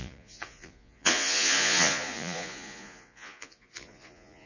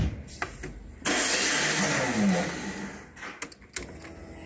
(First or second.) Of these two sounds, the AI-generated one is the first